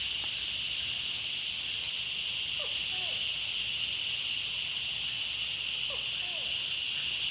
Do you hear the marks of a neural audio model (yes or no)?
no